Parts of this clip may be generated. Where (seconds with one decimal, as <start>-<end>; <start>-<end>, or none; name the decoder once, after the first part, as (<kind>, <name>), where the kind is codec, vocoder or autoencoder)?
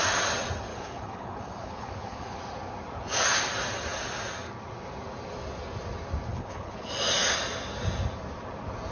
0.7-2.4 (codec, HILCodec); 6.3-6.9